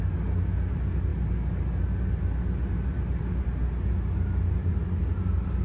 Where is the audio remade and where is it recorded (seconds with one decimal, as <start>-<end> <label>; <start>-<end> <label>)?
0.0-5.6 recorded